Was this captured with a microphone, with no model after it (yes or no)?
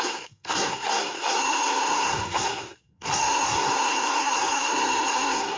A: no